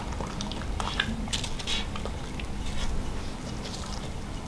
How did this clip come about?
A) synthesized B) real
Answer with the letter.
B